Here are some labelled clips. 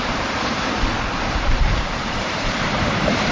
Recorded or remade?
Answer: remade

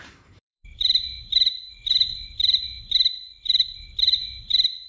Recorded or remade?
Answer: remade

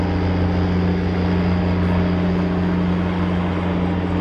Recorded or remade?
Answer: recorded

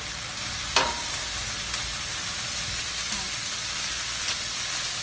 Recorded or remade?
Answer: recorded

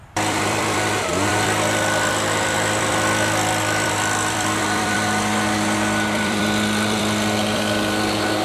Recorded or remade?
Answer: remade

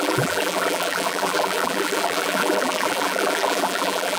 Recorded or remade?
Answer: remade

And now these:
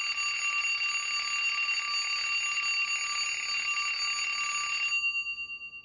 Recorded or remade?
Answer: recorded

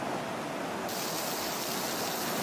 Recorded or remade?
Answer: recorded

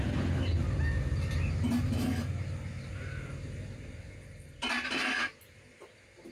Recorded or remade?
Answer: recorded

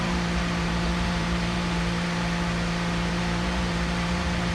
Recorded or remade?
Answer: remade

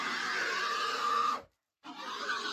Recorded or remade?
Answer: recorded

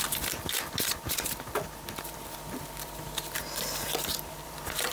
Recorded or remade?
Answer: remade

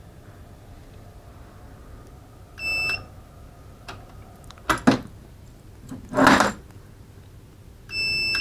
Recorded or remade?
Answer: recorded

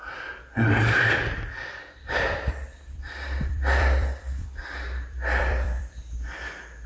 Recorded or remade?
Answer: remade